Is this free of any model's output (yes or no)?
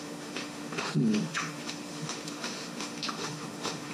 no